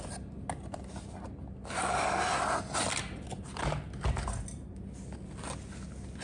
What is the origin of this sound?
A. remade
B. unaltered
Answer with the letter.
B